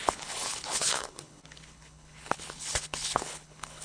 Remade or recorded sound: remade